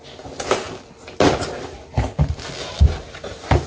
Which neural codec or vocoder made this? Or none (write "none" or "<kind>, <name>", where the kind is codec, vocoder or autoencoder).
none